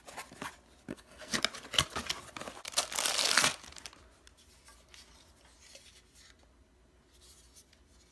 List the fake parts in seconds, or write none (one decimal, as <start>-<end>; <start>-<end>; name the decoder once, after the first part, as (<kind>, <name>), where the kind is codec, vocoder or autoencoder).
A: 0.9-1.4 (codec, SNAC)